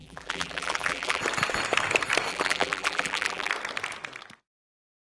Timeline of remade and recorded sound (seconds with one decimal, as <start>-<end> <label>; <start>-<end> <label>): 0.0-1.2 remade; 1.2-2.3 recorded; 2.3-3.5 remade; 3.5-5.0 recorded